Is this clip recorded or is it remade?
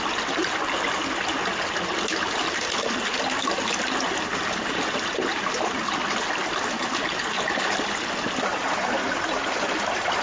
recorded